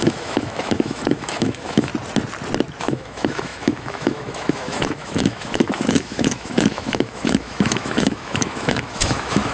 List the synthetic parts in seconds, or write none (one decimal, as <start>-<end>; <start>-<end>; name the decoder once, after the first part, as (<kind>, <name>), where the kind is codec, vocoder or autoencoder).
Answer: 0.0-1.9 (autoencoder, DAC-VAE); 2.8-9.5